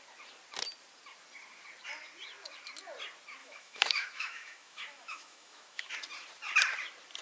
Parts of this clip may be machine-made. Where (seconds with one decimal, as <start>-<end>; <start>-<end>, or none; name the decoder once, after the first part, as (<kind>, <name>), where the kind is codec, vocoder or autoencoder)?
3.4-5.9 (autoencoder, DAC-VAE)